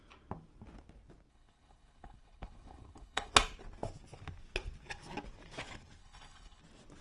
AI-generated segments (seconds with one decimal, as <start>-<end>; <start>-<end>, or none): 1.3-3.3; 6.0-6.6